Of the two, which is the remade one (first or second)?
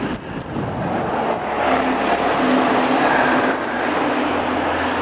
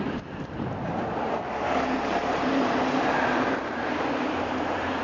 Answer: second